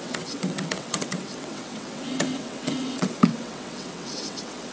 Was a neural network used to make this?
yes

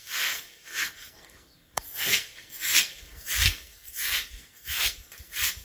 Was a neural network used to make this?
yes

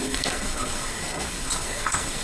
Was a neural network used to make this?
yes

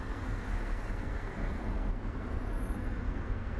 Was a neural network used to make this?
yes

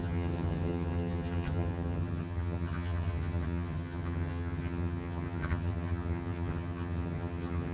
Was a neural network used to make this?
yes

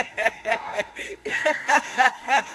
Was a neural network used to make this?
yes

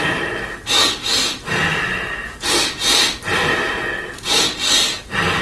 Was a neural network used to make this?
no